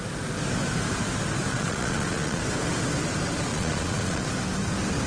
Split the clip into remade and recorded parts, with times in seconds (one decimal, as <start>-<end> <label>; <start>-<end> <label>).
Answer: 0.0-1.5 recorded; 1.5-2.4 remade; 2.4-3.5 recorded; 3.5-4.3 remade; 4.3-5.1 recorded